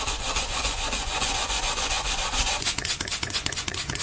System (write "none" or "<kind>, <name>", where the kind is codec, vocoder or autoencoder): vocoder, Vocos